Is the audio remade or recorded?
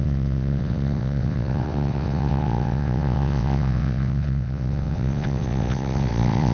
remade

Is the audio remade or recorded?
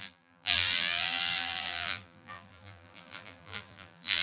remade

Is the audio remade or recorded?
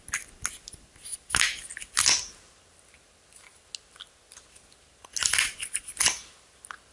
recorded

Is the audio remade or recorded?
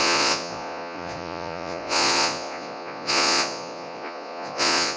remade